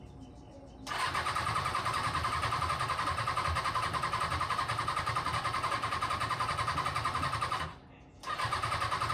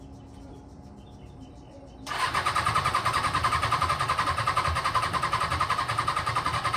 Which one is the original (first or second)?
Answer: first